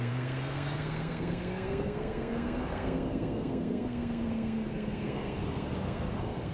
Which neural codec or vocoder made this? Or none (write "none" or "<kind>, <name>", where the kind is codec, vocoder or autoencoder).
codec, SNAC